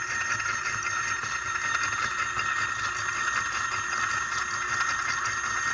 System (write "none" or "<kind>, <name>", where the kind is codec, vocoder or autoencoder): none